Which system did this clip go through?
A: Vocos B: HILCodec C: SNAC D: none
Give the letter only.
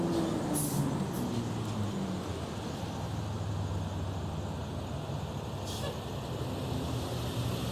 D